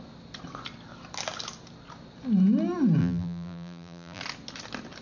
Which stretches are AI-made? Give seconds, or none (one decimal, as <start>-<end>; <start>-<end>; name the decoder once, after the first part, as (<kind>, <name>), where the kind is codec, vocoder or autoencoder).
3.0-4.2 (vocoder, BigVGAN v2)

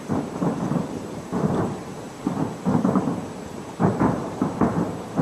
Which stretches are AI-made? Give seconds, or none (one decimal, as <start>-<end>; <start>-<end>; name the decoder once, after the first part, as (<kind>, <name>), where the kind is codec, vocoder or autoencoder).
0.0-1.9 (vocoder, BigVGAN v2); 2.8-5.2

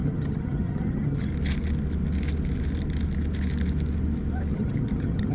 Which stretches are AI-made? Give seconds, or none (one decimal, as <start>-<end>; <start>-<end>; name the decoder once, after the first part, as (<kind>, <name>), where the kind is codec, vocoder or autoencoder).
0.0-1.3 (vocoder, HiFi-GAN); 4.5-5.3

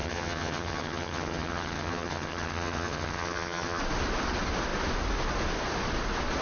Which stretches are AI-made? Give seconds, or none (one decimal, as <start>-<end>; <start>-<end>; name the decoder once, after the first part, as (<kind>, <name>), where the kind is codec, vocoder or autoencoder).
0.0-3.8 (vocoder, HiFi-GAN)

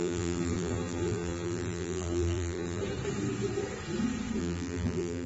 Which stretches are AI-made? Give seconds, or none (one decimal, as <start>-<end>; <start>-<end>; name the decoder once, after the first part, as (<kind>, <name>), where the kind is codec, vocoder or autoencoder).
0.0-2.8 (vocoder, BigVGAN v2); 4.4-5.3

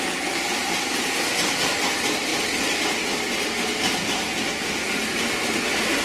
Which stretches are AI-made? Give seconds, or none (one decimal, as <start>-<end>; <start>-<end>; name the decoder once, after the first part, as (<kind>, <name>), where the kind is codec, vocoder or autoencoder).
0.6-1.1 (vocoder, BigVGAN v2)

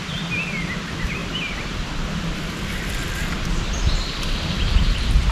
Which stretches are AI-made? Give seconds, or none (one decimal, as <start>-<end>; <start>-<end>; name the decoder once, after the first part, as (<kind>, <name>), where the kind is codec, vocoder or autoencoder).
none

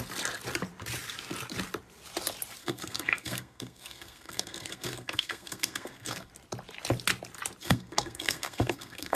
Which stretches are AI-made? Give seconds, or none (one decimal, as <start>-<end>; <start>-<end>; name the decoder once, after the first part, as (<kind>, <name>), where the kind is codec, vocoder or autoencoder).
2.6-6.3 (codec, SNAC); 7.6-9.2